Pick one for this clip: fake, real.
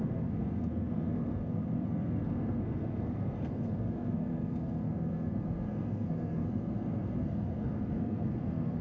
fake